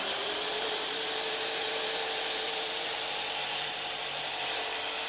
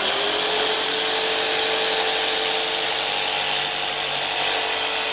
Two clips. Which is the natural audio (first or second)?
second